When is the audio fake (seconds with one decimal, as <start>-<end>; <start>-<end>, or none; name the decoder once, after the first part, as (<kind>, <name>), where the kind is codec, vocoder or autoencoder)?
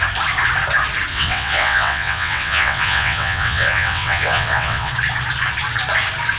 1.1-4.9 (vocoder, WaveNeXt)